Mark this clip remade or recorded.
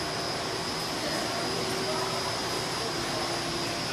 recorded